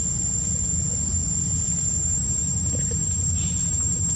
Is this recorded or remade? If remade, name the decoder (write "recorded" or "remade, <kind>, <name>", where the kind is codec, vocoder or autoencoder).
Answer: recorded